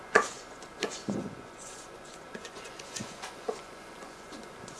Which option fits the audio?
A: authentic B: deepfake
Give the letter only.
B